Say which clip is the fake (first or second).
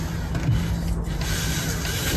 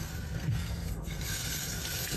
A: second